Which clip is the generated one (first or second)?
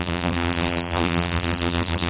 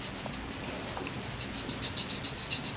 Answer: first